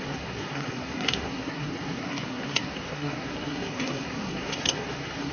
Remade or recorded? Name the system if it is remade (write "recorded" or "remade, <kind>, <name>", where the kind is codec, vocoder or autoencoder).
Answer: remade, codec, SNAC